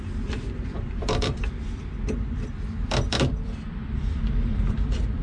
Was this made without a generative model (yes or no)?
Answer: no